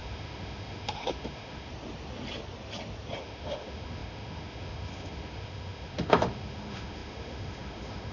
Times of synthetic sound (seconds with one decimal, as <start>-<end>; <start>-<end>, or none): 0.0-1.7; 3.2-8.1